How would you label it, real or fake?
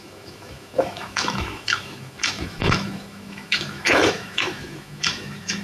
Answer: fake